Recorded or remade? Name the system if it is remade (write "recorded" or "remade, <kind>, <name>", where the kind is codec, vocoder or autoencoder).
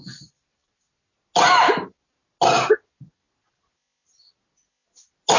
recorded